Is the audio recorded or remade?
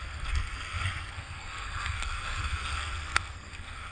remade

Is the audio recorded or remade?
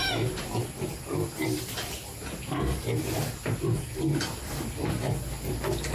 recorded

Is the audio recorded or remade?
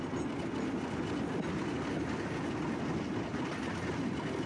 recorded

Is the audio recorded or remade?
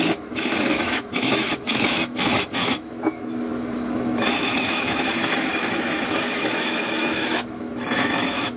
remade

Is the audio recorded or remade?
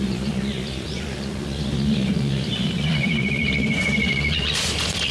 remade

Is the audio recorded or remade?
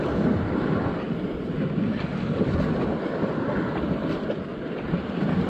recorded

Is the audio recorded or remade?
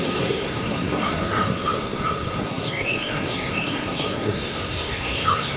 remade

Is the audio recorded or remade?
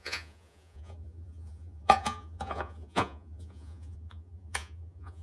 remade